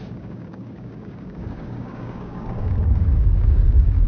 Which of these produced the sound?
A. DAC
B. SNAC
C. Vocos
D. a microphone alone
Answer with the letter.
A